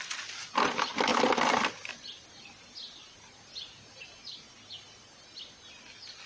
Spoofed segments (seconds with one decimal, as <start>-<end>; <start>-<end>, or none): none